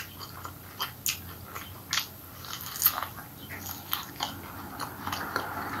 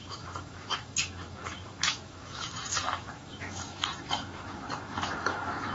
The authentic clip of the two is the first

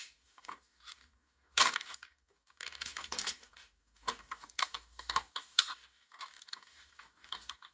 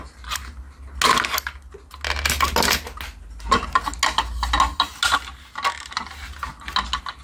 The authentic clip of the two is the second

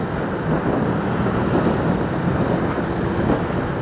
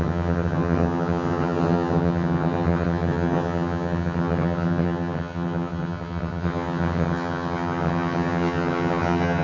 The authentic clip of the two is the first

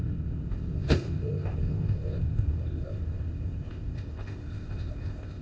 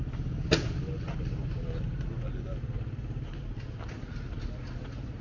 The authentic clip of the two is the second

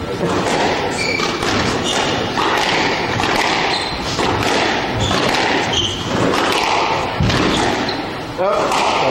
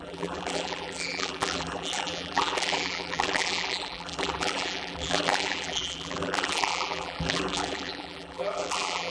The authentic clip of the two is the first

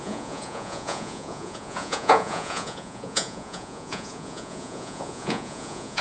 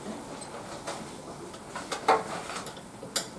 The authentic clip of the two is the second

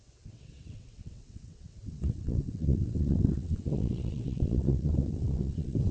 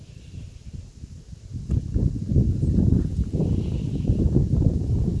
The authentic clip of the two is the second